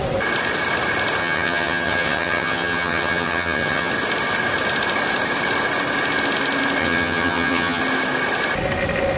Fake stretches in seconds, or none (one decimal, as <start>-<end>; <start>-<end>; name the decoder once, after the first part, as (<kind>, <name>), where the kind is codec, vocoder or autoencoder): 1.2-3.9 (vocoder, HiFi-GAN); 6.8-7.8